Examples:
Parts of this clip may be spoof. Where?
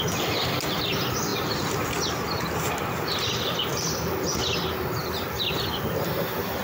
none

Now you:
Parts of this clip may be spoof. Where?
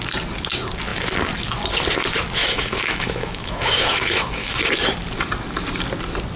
2.4-4.6 (autoencoder, DAC-VAE)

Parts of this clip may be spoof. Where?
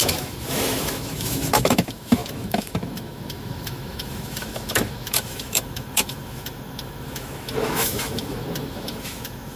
0.0-9.6 (autoencoder, DAC-VAE)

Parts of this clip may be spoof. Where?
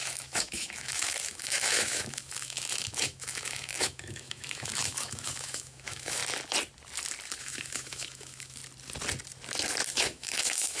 0.0-6.2 (autoencoder, DAC-VAE); 7.4-8.6; 9.9-10.8